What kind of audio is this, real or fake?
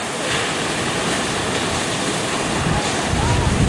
fake